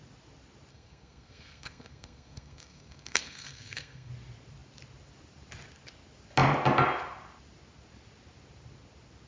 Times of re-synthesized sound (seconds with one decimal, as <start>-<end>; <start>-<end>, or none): 0.7-4.1